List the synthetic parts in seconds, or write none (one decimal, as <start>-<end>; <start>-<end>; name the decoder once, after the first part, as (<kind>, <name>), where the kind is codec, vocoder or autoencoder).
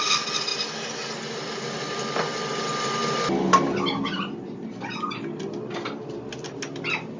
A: none